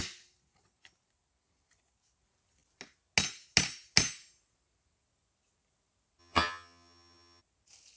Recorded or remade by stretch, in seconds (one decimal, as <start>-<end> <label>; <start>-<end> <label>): 0.0-6.2 recorded; 6.2-7.4 remade; 7.4-8.0 recorded